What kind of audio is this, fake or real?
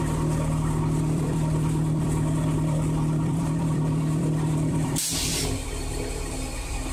fake